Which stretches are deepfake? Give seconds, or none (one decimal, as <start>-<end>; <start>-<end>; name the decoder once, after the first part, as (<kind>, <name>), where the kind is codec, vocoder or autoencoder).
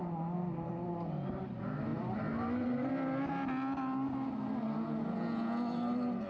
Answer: 0.0-0.7 (vocoder, BigVGAN v2); 1.9-2.9